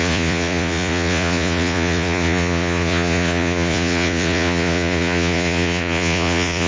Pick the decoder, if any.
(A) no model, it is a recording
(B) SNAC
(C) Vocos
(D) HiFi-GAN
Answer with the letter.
C